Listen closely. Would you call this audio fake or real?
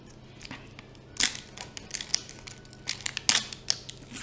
real